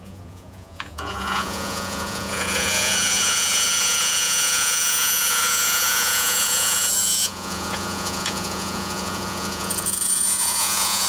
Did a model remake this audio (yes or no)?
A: yes